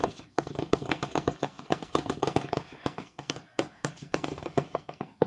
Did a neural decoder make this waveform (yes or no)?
yes